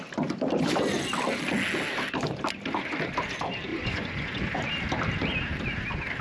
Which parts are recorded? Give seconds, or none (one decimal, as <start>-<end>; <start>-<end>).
0.0-3.7; 4.4-6.2